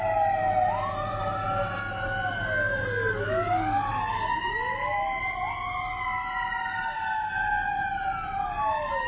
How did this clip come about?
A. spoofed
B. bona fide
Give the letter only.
B